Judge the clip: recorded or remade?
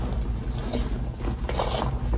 recorded